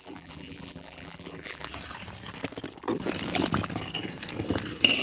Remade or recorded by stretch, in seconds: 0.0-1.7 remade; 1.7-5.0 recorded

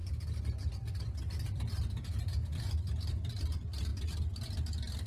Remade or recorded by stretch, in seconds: 0.0-5.1 recorded

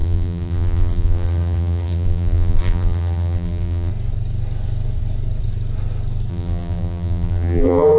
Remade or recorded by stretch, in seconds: 0.0-3.9 remade; 3.9-6.3 recorded; 6.3-8.0 remade

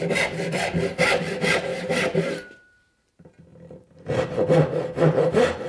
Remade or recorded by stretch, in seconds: 0.0-1.7 recorded; 1.7-3.1 remade; 3.1-5.7 recorded

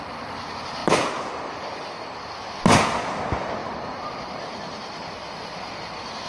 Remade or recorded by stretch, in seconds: 0.0-0.8 recorded; 0.8-1.5 remade; 1.5-3.6 recorded; 3.6-4.1 remade; 4.1-6.3 recorded

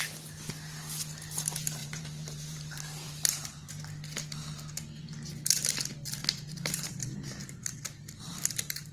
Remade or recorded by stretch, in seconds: 0.0-1.8 recorded; 1.8-3.7 remade; 3.7-6.2 recorded; 6.2-6.9 remade; 6.9-7.4 recorded; 7.4-8.0 remade; 8.0-8.9 recorded

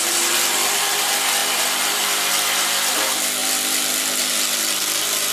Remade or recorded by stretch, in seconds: 0.0-5.3 remade

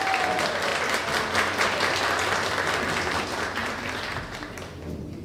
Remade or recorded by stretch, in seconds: 0.0-3.6 recorded; 3.6-4.5 remade; 4.5-5.2 recorded